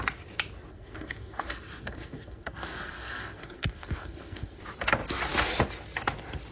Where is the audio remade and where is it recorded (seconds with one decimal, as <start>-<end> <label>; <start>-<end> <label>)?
0.0-0.7 recorded; 0.7-4.6 remade; 4.6-6.5 recorded